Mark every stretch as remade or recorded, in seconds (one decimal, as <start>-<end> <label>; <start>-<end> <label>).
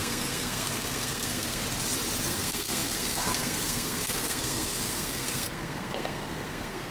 0.0-1.6 remade; 1.6-2.2 recorded; 2.2-6.9 remade